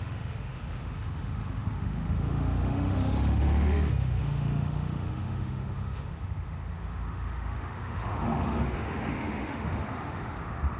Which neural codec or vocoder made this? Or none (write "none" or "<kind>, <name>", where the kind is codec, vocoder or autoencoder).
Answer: autoencoder, DAC-VAE